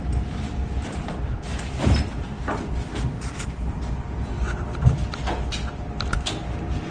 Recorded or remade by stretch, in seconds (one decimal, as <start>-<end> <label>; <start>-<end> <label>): 0.0-6.9 recorded